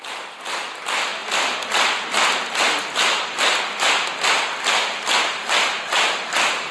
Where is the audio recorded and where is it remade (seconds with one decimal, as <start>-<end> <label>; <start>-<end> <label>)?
0.0-6.7 recorded